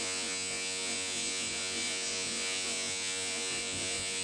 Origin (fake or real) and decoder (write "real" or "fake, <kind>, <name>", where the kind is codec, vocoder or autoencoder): fake, vocoder, Vocos